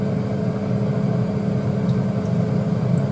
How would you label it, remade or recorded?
recorded